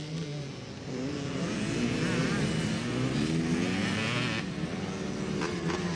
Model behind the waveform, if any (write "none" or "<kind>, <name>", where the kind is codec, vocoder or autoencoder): none